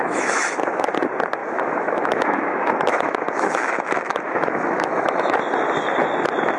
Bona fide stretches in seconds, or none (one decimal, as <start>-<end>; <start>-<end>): 0.9-1.4; 5.4-6.6